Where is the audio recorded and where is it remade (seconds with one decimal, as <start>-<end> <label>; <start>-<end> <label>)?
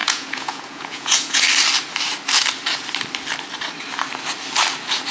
0.0-1.4 remade; 1.4-5.1 recorded